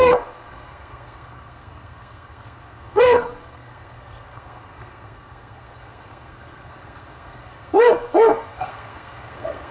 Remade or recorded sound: remade